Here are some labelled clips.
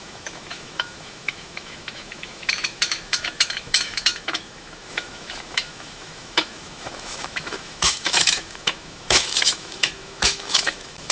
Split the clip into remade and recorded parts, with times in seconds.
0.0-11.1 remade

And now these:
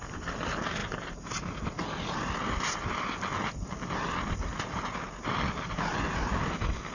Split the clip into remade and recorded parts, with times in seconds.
0.0-6.9 recorded

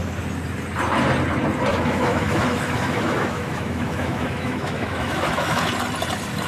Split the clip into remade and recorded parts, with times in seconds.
0.0-1.7 recorded; 1.7-5.6 remade; 5.6-6.5 recorded

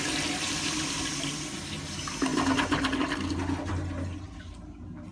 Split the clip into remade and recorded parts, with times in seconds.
0.0-5.1 recorded